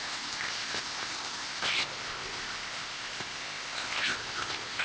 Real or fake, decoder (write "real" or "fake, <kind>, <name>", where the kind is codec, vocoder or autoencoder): fake, codec, ZipCodec